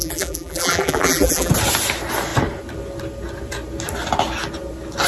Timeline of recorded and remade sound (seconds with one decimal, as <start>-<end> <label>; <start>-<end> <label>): 0.0-1.5 remade; 1.5-5.1 recorded